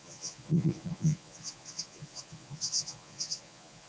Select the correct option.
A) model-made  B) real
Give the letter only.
A